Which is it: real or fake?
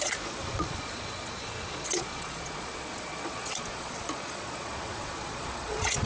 fake